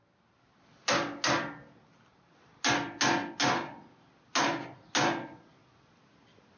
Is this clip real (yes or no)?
yes